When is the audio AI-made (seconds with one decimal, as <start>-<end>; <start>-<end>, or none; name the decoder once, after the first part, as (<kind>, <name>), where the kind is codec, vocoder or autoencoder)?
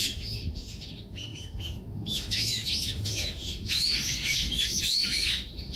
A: 0.0-5.8 (autoencoder, DAC-VAE)